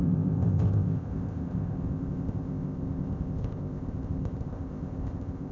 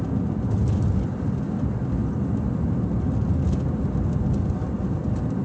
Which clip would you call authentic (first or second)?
second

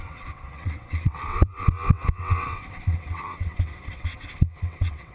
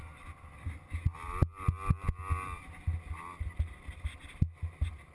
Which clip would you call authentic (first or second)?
second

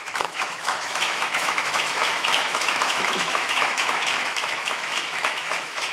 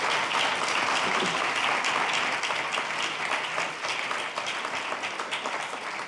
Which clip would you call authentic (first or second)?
second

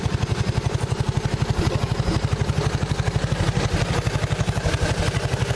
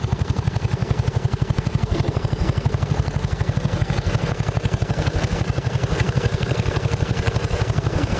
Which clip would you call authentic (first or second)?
first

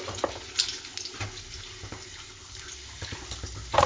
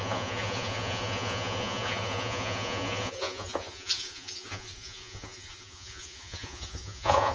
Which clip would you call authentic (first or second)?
first